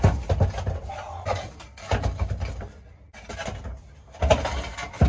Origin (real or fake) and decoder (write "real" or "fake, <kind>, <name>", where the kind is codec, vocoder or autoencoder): real